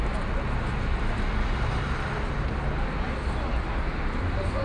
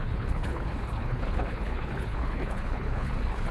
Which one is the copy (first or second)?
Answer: second